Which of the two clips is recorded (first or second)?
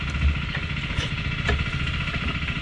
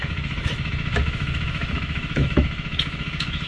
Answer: first